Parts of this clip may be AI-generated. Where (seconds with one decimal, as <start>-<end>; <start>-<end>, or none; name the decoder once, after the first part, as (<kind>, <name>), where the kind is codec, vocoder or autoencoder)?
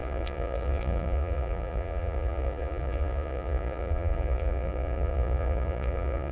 0.0-6.3 (vocoder, Vocos)